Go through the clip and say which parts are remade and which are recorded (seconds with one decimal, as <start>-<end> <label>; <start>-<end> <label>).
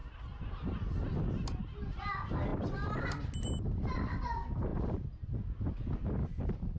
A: 0.0-6.8 recorded